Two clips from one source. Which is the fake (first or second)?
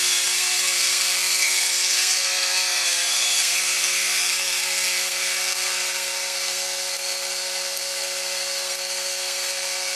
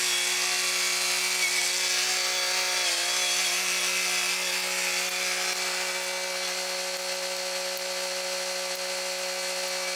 first